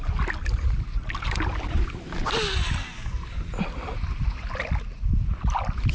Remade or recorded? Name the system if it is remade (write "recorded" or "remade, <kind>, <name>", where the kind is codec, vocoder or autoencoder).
recorded